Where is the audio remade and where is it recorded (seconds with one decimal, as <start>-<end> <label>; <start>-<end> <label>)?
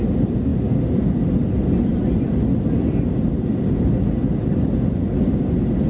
0.0-5.9 recorded